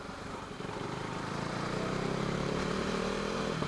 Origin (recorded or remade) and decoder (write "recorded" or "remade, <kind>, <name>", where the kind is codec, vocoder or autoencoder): remade, vocoder, BigVGAN v2